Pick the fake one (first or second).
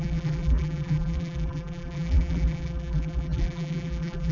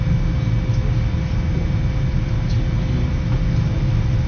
first